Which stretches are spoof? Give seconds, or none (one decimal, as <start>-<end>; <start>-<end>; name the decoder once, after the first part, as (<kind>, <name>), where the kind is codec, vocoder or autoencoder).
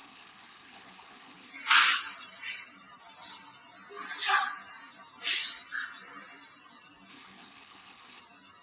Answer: 0.0-1.5 (codec, HILCodec); 7.1-8.2